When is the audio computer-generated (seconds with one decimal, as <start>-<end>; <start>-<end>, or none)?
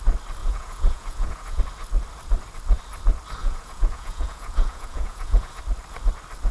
0.4-1.6; 3.4-5.6